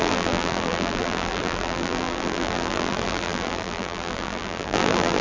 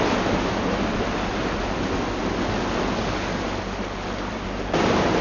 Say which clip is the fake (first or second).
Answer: first